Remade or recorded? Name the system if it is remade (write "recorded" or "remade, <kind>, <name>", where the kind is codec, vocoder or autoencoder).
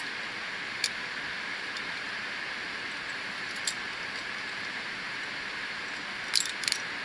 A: recorded